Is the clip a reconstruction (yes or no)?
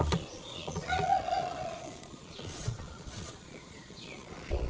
yes